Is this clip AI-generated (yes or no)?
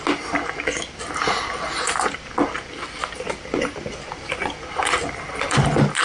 no